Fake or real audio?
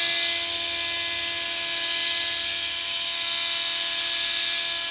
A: real